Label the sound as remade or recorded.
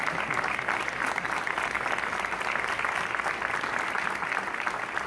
recorded